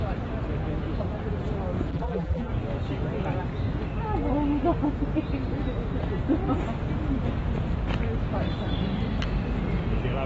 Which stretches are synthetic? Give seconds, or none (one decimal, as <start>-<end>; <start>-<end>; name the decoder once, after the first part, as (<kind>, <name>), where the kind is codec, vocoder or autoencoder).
1.9-2.5 (vocoder, BigVGAN v2)